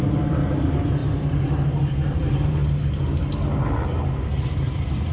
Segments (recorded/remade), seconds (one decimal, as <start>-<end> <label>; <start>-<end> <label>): 0.0-2.6 remade; 2.6-5.1 recorded